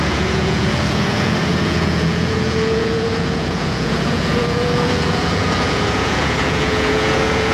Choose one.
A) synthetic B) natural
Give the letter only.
A